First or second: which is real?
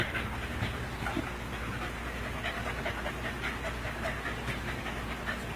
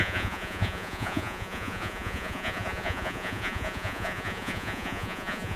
first